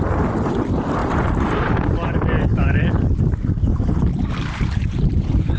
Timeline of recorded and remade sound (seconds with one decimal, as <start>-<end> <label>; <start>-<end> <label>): 0.0-1.0 recorded; 1.0-1.7 remade; 1.7-2.5 recorded; 2.5-5.6 remade